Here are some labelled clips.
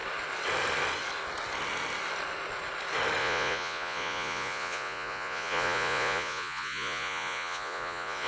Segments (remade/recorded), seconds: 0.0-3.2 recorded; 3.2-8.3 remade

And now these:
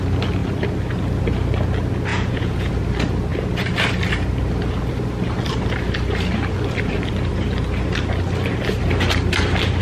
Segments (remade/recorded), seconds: 0.0-2.1 recorded; 2.1-2.7 remade; 2.7-9.8 recorded

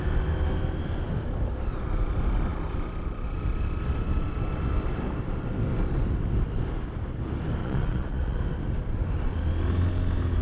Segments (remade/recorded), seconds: 0.0-7.6 recorded; 7.6-8.4 remade; 8.4-10.4 recorded

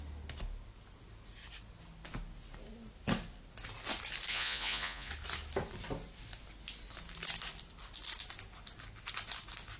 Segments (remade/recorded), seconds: 0.0-4.3 recorded; 4.3-5.1 remade; 5.1-9.8 recorded

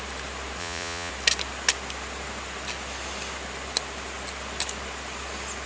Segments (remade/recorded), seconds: 0.0-0.6 recorded; 0.6-1.1 remade; 1.1-5.7 recorded